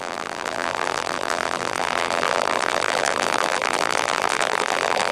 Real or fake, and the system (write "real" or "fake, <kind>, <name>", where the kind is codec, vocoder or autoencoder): fake, vocoder, BigVGAN v2